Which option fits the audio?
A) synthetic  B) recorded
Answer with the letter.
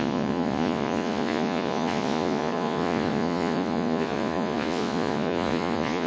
A